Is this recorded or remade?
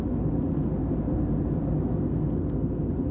recorded